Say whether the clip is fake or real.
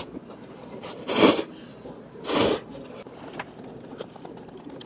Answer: real